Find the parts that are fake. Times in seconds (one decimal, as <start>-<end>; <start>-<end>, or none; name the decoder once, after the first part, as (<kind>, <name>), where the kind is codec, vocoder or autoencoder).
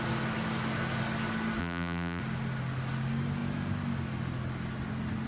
1.6-2.2 (vocoder, BigVGAN v2)